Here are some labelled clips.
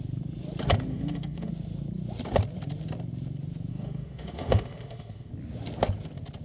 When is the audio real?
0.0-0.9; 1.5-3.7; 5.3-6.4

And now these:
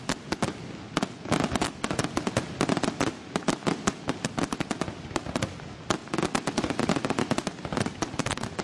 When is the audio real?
0.0-8.6

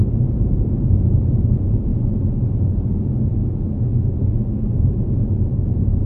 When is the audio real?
3.3-4.1

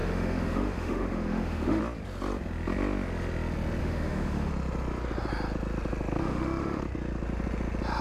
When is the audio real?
1.8-3.8; 4.5-6.2; 6.8-8.0

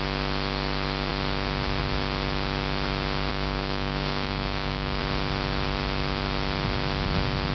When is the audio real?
0.0-3.3; 5.0-7.5

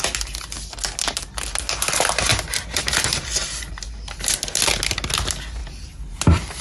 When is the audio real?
0.0-2.3; 3.7-6.6

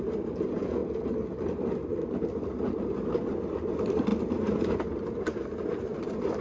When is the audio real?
0.0-6.4